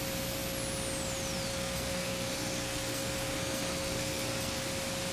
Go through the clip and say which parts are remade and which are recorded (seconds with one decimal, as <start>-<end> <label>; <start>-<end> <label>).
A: 0.0-1.5 recorded; 1.5-4.6 remade; 4.6-5.1 recorded